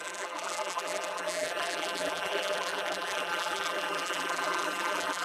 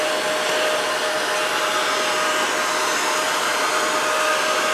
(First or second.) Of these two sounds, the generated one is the first